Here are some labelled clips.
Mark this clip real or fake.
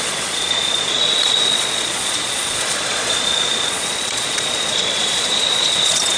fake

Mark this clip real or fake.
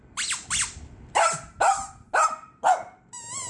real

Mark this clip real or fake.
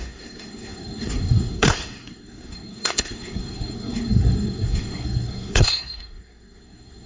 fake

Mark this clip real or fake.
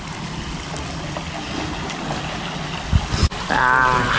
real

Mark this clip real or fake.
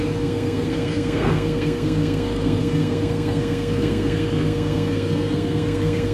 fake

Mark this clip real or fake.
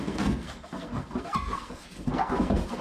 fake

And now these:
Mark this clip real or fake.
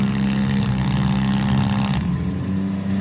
real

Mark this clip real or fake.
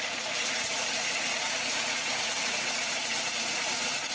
fake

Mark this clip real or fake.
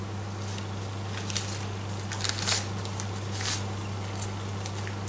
real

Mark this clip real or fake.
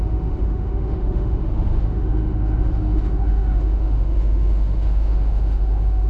fake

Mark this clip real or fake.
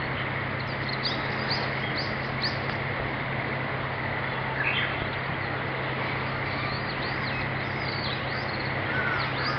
real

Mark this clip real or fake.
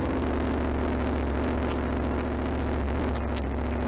real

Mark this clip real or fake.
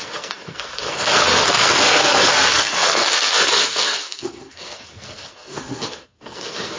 fake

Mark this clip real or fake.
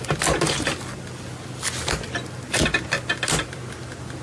real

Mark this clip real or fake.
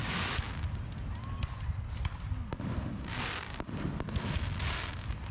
real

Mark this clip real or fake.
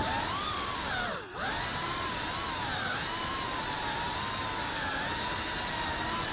real